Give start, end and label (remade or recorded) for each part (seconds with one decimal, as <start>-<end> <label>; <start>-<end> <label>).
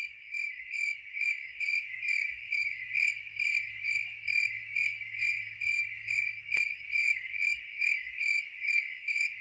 0.0-9.4 remade